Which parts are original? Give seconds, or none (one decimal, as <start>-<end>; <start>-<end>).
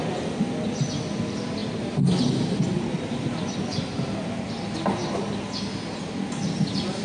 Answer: 0.0-7.0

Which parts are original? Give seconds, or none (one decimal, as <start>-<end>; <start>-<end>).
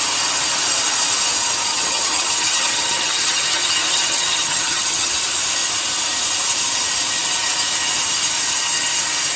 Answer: 0.0-1.7; 5.1-9.4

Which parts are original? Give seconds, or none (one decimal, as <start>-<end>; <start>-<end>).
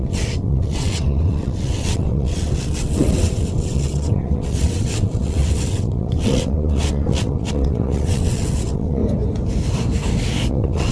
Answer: 9.0-10.5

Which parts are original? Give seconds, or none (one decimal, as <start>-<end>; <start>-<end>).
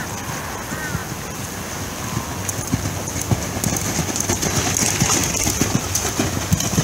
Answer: 0.0-6.8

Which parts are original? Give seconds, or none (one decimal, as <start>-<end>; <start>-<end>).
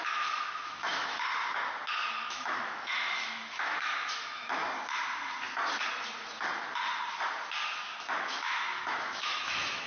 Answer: 1.3-2.1; 4.6-7.7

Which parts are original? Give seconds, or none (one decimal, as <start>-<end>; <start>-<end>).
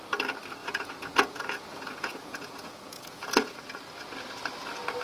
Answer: 0.0-0.6; 3.6-5.0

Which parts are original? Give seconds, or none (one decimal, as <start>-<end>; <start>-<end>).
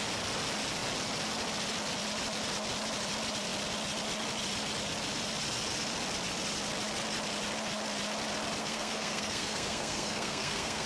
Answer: 0.0-8.6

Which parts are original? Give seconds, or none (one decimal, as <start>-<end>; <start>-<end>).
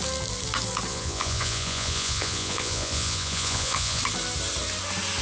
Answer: 0.0-0.9; 4.0-5.2